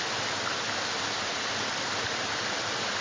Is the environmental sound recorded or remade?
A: recorded